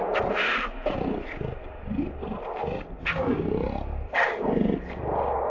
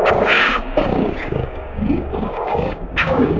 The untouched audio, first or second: first